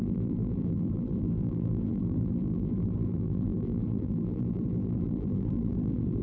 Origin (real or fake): fake